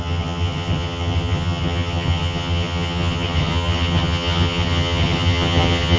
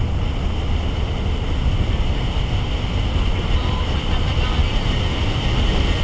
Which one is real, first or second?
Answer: second